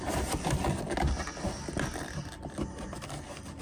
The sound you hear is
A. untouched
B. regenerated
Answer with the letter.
A